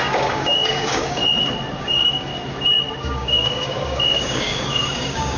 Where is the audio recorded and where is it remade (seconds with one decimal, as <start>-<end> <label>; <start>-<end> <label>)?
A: 0.0-1.2 remade; 1.2-1.8 recorded; 1.8-2.3 remade; 2.3-3.0 recorded; 3.0-5.4 remade